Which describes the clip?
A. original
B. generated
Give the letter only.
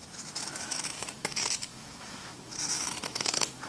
B